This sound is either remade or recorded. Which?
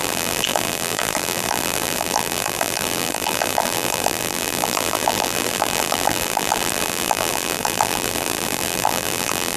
remade